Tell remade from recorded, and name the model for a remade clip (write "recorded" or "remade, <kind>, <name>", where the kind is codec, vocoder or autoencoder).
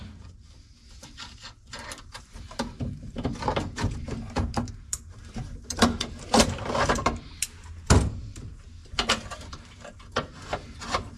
remade, vocoder, BigVGAN v2